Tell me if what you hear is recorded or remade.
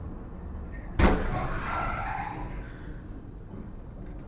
recorded